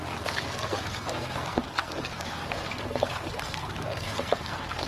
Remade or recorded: remade